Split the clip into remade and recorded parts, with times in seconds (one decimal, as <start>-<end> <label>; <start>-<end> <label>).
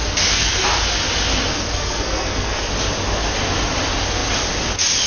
0.0-0.5 remade; 0.5-1.5 recorded; 1.5-2.7 remade; 2.7-5.1 recorded